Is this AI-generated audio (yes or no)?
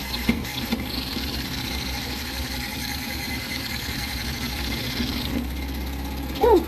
yes